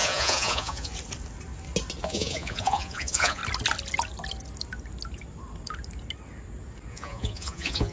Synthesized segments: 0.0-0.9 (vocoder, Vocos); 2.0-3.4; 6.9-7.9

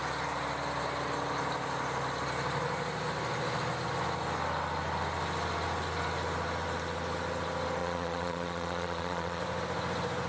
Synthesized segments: 7.8-9.4 (vocoder, Vocos)

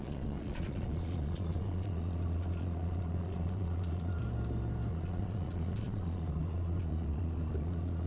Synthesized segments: 0.0-4.2 (vocoder, Vocos); 4.9-8.1

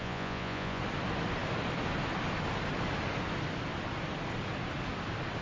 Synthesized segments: 0.0-0.8 (vocoder, Vocos)

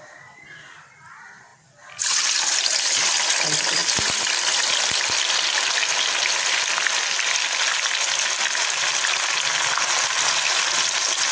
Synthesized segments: none

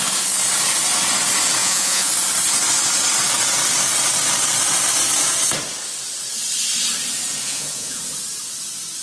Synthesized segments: 1.6-2.1 (vocoder, Vocos); 7.4-8.0

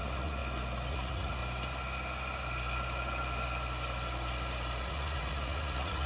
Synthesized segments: 0.0-0.4 (vocoder, Vocos); 0.9-1.4; 4.8-6.1

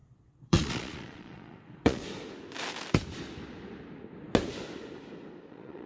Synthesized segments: 0.0-2.0 (vocoder, Vocos); 5.5-5.9